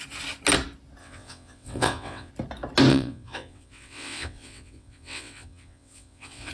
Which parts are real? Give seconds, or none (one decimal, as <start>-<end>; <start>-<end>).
0.0-1.0; 2.3-2.9